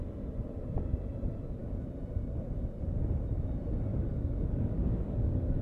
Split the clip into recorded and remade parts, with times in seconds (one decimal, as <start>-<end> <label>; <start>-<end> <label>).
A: 0.0-3.9 recorded; 3.9-5.6 remade